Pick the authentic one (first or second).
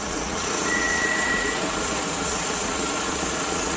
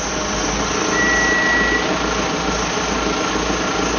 second